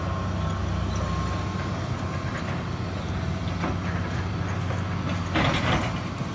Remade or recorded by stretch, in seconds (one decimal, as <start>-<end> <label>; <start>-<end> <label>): 0.0-6.3 recorded